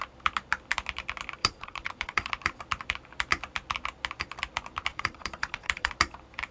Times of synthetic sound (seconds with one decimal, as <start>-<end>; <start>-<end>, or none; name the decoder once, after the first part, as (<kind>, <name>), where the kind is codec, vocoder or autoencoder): 1.4-2.3 (vocoder, Vocos); 4.9-5.9